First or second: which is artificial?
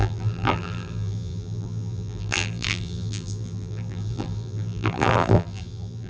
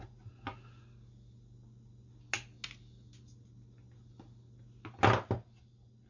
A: first